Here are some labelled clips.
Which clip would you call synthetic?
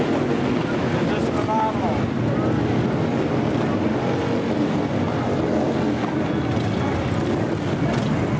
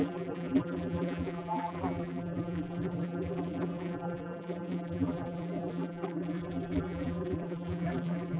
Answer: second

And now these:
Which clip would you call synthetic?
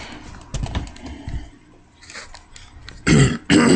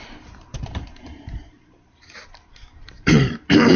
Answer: second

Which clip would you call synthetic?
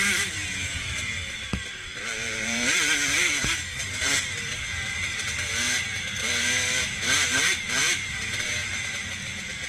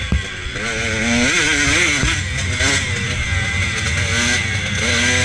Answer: first